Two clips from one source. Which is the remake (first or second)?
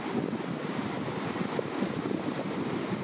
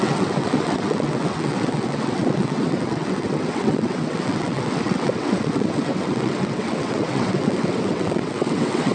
second